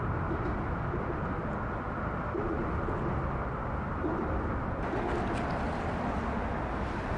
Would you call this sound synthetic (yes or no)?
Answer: no